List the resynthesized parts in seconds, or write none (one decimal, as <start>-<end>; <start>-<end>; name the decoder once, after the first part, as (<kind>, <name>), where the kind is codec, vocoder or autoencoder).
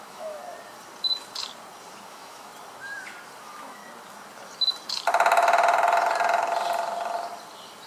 0.0-0.4 (autoencoder, DAC-VAE); 2.1-2.5; 3.4-3.8